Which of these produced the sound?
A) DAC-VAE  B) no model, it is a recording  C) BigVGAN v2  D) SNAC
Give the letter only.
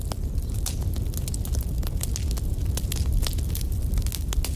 B